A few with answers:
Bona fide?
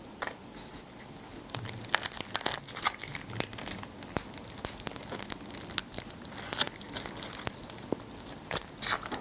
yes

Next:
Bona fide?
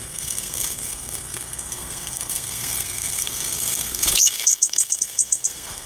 no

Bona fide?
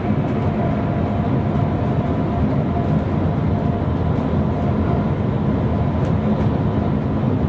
yes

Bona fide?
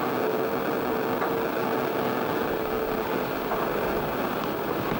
yes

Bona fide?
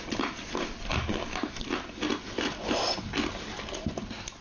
yes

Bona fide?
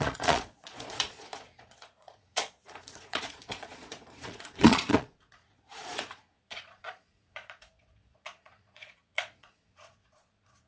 no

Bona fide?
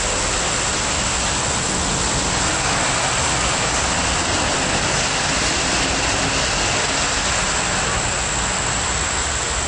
yes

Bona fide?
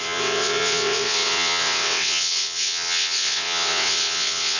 no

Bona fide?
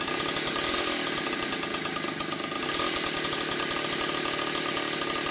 yes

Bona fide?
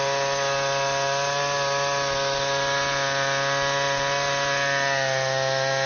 yes